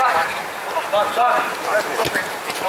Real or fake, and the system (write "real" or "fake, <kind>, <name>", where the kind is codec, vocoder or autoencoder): fake, vocoder, BigVGAN v2